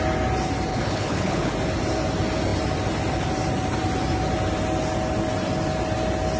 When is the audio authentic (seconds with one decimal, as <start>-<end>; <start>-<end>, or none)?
0.0-0.7; 1.5-6.4